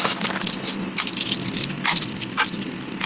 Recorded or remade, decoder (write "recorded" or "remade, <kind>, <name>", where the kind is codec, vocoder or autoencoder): recorded